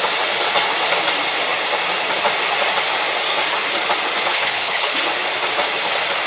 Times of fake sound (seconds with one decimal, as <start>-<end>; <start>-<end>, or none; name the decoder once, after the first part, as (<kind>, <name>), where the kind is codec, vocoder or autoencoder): 4.3-5.0 (codec, HILCodec)